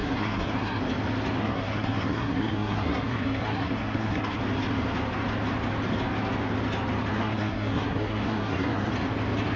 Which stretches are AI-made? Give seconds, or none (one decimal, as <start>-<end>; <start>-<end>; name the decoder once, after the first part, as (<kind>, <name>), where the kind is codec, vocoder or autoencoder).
0.0-0.8 (codec, SNAC); 1.4-4.4; 7.1-8.9

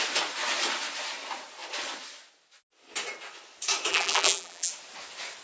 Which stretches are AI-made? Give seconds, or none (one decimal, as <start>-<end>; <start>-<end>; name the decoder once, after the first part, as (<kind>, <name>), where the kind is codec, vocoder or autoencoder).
3.9-4.7 (vocoder, BigVGAN v2)

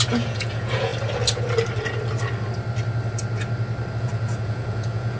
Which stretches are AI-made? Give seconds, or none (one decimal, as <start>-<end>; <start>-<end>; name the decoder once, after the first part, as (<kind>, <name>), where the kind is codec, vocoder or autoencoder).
0.0-0.9 (vocoder, Vocos); 4.0-5.2

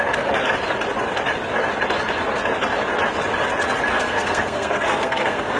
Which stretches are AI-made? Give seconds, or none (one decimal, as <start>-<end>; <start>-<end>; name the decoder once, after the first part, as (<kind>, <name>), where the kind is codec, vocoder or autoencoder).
3.9-5.6 (codec, SNAC)